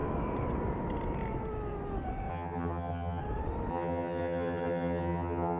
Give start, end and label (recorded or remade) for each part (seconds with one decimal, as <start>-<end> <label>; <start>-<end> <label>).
0.0-2.3 recorded; 2.3-3.2 remade; 3.2-3.7 recorded; 3.7-5.6 remade